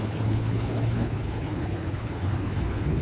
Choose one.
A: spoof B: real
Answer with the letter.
A